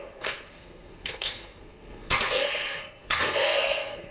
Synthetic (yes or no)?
yes